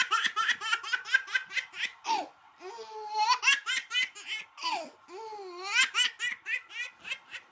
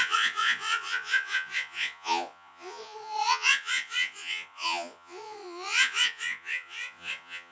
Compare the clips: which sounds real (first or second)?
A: first